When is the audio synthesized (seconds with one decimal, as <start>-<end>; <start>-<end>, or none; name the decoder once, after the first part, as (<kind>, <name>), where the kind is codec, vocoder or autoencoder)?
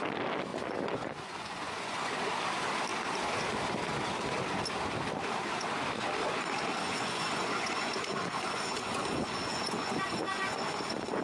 0.5-2.1 (vocoder, Vocos); 6.8-11.2